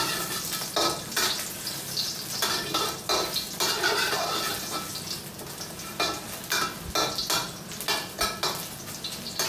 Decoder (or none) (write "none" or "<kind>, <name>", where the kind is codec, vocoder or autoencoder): none